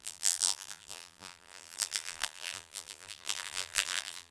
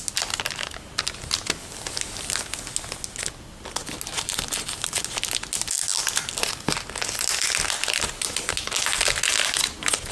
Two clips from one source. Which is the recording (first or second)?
second